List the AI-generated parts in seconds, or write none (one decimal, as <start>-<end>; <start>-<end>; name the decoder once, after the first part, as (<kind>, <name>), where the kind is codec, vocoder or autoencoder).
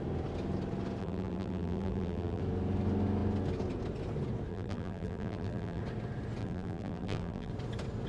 1.0-2.4 (vocoder, BigVGAN v2); 4.5-5.8; 6.4-7.5